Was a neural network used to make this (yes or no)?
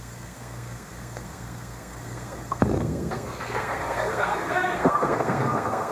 yes